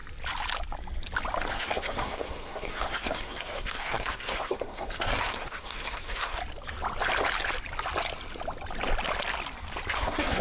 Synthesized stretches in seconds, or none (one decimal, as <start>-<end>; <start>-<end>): 1.5-6.4; 9.9-10.4